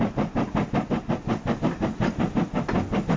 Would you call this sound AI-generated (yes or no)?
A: no